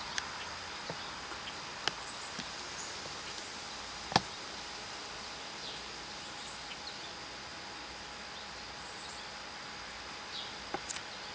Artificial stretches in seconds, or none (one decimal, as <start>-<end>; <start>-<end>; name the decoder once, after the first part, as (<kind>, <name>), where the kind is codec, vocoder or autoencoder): none